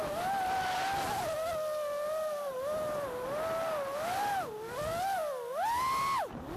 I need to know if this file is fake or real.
real